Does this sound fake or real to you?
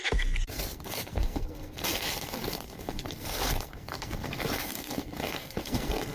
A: fake